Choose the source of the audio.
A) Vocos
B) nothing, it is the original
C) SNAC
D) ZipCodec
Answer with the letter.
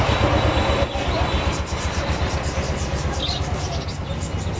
B